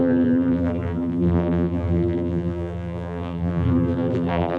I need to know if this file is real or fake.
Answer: fake